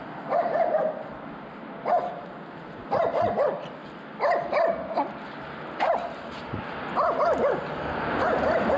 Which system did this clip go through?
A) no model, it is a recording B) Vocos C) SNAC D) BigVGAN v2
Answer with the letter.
A